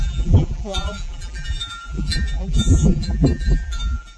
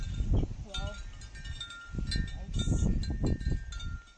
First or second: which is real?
second